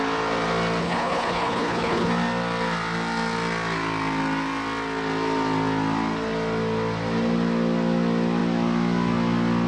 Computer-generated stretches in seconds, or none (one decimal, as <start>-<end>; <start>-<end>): 0.8-2.1